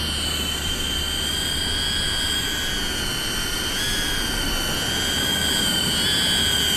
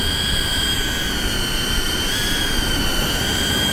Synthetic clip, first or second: second